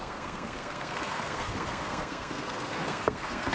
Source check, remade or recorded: remade